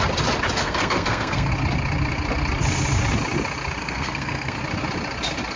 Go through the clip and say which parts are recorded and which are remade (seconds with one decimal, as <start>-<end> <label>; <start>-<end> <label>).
0.0-0.6 recorded; 0.6-1.5 remade; 1.5-3.8 recorded; 3.8-4.6 remade; 4.6-5.6 recorded